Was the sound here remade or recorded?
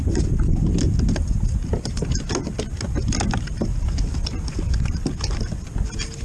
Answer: recorded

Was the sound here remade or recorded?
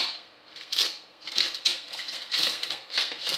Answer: remade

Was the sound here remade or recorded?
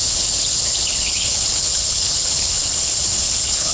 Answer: remade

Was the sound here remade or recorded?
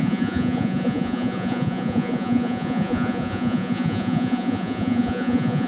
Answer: remade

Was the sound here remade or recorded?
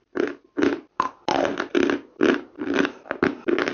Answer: remade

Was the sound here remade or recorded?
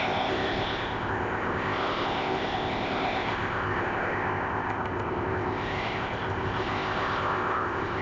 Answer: remade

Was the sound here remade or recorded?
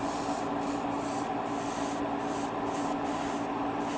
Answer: recorded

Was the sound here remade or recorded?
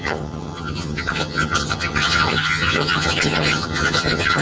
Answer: remade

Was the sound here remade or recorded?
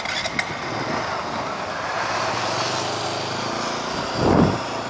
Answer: recorded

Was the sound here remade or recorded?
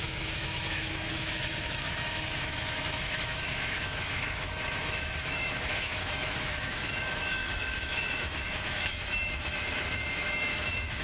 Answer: remade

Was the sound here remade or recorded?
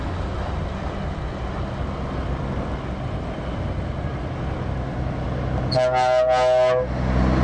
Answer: recorded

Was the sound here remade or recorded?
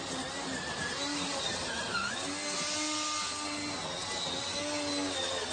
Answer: recorded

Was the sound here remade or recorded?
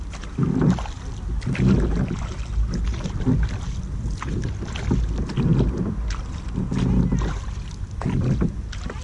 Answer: recorded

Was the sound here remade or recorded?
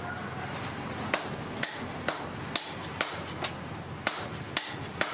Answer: recorded